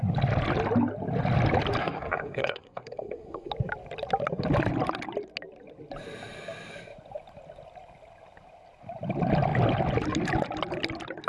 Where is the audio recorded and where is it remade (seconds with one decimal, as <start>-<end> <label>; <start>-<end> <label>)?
0.0-1.8 recorded; 1.8-3.5 remade; 3.5-11.3 recorded